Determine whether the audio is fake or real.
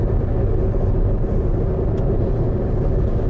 real